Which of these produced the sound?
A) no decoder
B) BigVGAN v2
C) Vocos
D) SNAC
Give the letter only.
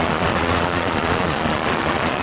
C